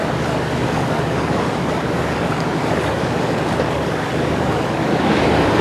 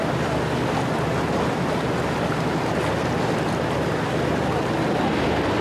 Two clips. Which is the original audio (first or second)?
second